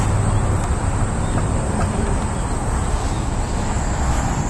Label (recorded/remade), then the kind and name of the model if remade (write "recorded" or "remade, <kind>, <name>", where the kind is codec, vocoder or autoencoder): recorded